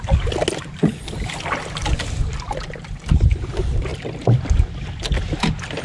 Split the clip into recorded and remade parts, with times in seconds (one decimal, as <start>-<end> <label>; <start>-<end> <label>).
0.0-5.8 recorded

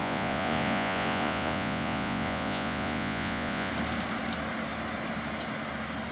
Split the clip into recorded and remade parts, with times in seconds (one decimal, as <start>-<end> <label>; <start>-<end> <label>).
0.0-3.7 remade; 3.7-6.1 recorded

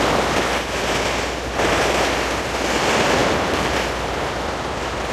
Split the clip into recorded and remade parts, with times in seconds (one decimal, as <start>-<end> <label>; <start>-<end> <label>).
0.0-3.2 recorded; 3.2-3.7 remade; 3.7-5.1 recorded

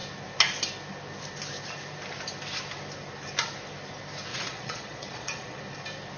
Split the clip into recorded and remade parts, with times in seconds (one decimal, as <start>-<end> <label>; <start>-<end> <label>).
0.0-4.3 recorded; 4.3-5.6 remade; 5.6-6.2 recorded